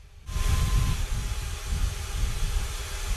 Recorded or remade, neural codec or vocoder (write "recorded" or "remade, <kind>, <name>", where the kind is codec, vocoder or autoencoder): recorded